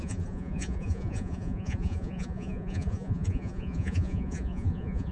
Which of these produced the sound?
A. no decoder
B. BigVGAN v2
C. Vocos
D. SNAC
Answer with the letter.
C